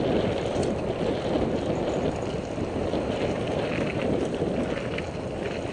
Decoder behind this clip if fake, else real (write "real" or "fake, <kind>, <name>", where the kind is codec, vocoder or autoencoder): real